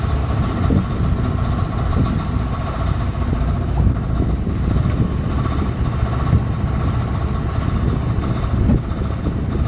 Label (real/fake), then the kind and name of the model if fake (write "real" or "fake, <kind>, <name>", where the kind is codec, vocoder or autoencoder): real